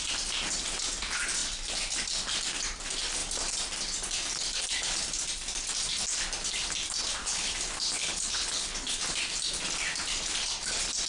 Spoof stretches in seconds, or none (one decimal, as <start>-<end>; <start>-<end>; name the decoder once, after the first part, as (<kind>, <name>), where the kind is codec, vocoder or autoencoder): 7.2-9.0 (codec, HILCodec)